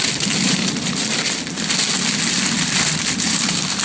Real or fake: real